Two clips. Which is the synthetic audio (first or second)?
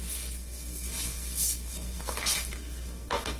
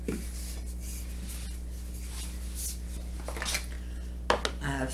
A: first